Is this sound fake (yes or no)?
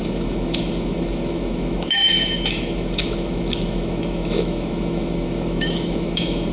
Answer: yes